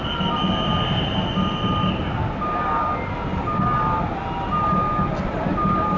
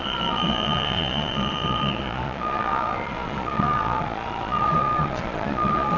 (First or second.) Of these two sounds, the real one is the first